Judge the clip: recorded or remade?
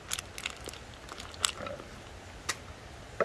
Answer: recorded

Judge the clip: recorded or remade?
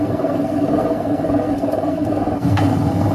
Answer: remade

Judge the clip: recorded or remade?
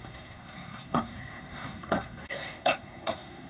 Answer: remade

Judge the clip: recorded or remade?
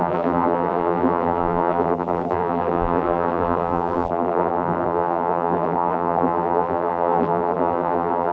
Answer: remade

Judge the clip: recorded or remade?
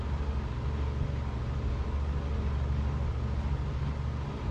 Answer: recorded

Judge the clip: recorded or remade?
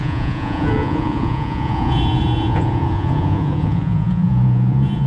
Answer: remade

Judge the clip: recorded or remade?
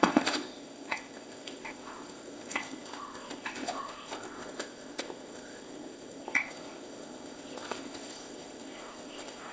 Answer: remade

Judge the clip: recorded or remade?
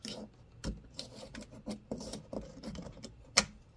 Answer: recorded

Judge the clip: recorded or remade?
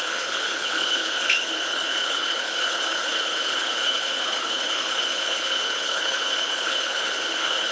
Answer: remade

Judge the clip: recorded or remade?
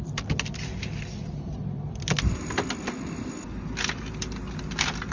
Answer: recorded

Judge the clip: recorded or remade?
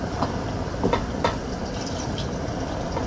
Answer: remade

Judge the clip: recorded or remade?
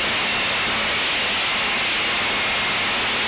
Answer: recorded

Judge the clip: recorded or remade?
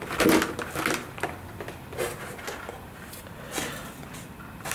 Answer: recorded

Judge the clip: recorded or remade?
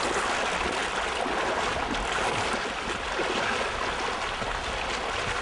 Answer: recorded